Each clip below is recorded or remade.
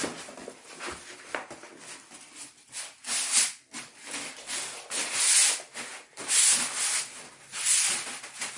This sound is recorded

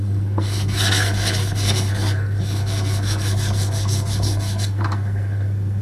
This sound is remade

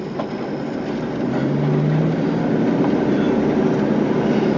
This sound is recorded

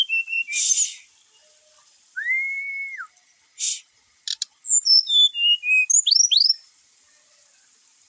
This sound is recorded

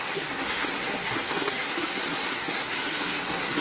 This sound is remade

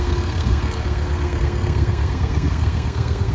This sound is remade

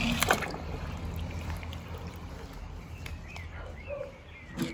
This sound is recorded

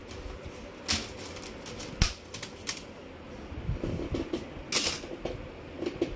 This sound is recorded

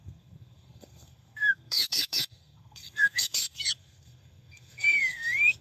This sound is remade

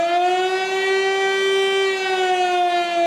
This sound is recorded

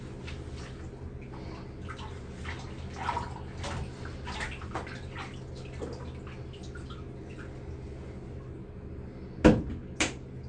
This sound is recorded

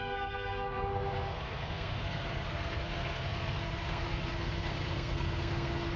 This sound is remade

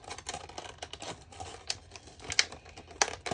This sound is recorded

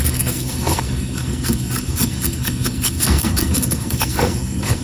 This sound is remade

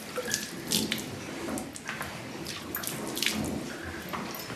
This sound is recorded